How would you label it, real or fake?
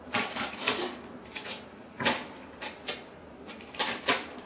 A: fake